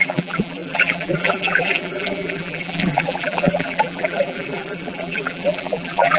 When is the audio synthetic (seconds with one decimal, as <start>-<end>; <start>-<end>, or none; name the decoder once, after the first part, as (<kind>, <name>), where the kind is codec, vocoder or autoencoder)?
0.0-6.2 (vocoder, BigVGAN v2)